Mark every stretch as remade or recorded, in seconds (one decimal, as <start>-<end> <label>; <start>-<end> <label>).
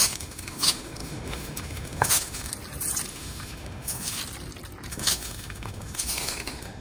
0.0-2.5 remade; 2.5-3.1 recorded; 3.1-4.2 remade; 4.2-4.9 recorded; 4.9-6.8 remade